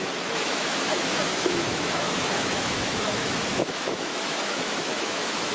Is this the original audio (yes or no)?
no